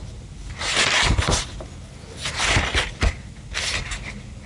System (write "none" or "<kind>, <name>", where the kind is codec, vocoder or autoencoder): none